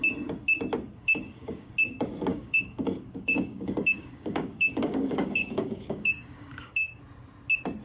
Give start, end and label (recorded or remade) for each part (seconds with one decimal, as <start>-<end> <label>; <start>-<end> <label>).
0.0-1.0 recorded; 1.0-1.7 remade; 1.7-2.3 recorded; 2.3-7.0 remade; 7.0-7.8 recorded